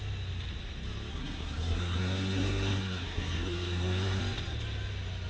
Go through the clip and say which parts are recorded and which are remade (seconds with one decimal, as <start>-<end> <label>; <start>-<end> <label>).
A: 0.0-1.1 recorded; 1.1-4.2 remade; 4.2-5.3 recorded